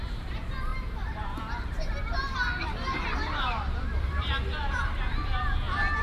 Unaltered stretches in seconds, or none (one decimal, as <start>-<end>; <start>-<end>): 0.0-0.7; 1.4-2.2; 4.4-6.0